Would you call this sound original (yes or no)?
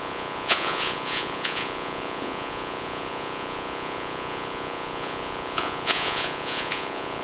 no